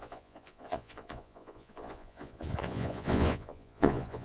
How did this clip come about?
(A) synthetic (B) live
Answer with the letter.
A